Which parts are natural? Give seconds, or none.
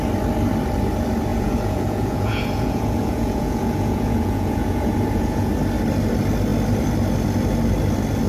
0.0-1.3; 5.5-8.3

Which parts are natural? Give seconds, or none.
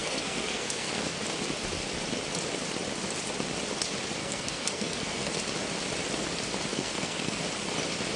1.2-4.2; 5.4-6.7; 7.4-8.2